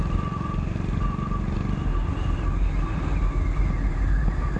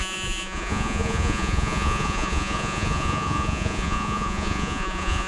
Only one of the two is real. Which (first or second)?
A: first